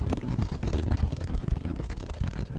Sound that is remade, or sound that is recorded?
remade